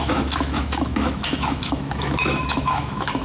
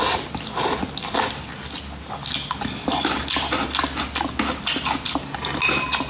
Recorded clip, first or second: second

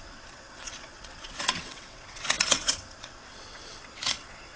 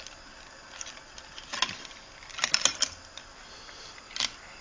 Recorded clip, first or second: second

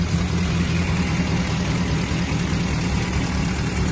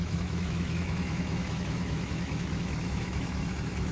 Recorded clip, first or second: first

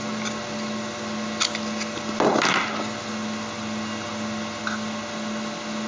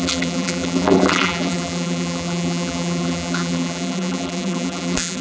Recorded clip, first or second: first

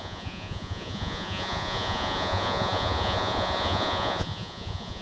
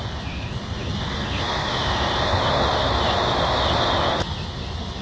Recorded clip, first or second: second